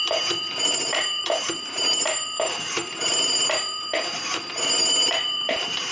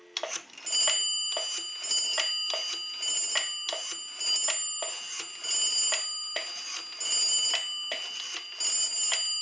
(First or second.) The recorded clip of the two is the second